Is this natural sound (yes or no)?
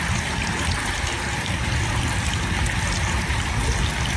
yes